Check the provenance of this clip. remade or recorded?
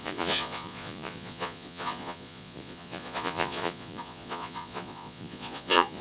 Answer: remade